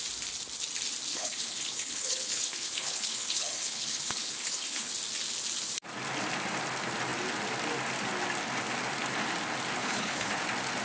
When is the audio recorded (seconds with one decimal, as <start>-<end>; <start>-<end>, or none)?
0.0-1.1; 4.9-9.8; 10.3-10.8